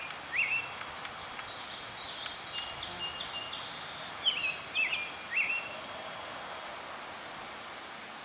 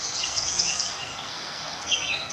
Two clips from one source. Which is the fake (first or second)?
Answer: second